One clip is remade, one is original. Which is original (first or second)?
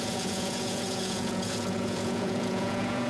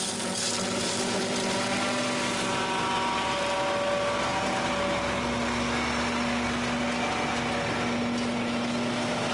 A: second